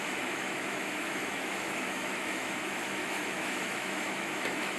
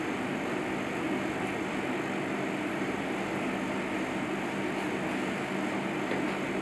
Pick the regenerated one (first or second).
first